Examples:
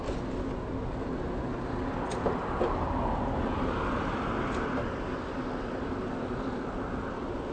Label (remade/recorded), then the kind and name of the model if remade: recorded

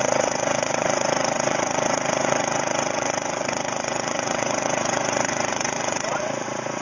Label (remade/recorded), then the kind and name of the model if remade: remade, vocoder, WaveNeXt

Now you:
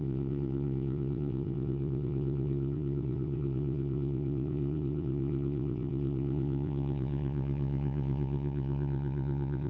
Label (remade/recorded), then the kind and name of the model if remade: remade, vocoder, WaveNeXt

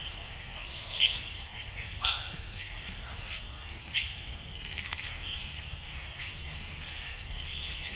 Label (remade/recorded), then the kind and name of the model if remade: remade, codec, SNAC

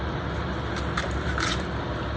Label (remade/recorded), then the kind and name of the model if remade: recorded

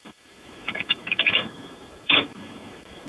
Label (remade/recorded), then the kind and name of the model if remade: remade, autoencoder, DAC-VAE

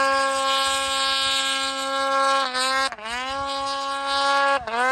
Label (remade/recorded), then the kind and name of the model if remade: recorded